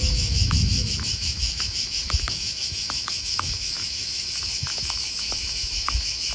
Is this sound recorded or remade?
remade